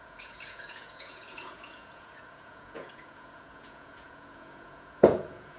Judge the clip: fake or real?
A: fake